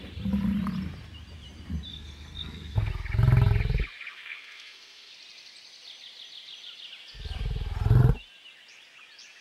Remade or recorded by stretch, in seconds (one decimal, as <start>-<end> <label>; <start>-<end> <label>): 0.0-1.9 recorded; 1.9-2.9 remade; 2.9-4.1 recorded; 4.1-5.1 remade; 5.1-9.4 recorded